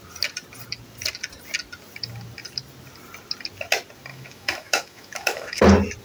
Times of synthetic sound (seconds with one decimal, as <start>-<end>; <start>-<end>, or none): 4.1-5.6

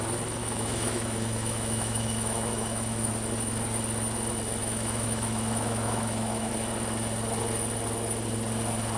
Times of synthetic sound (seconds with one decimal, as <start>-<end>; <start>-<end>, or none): 0.4-3.1; 4.6-6.5